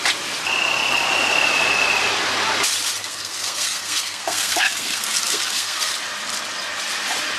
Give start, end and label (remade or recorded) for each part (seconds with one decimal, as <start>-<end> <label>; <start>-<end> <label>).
0.0-3.0 recorded; 3.0-5.9 remade; 5.9-7.4 recorded